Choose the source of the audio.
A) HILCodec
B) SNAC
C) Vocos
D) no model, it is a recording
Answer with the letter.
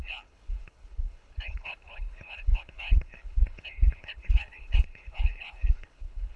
A